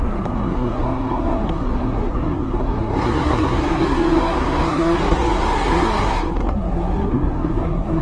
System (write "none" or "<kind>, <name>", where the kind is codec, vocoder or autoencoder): codec, SNAC